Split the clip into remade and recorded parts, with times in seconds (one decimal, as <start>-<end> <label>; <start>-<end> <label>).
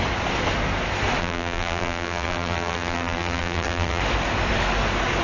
0.0-1.2 recorded; 1.2-4.0 remade; 4.0-5.2 recorded